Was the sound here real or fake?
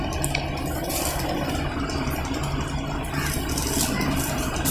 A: real